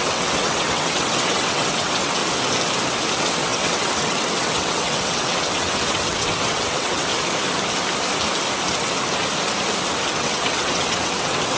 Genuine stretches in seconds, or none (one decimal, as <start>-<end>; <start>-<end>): 2.2-3.1; 7.1-10.2